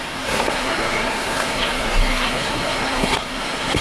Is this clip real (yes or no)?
no